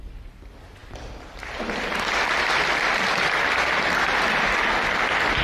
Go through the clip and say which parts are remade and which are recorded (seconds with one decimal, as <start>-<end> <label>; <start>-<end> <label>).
0.0-5.4 recorded